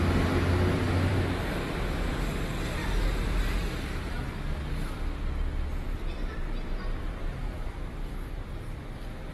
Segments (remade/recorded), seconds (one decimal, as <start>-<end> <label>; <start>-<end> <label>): 0.0-1.1 recorded; 1.1-2.3 remade; 2.3-2.8 recorded; 2.8-4.1 remade; 4.1-6.3 recorded; 6.3-7.7 remade; 7.7-9.3 recorded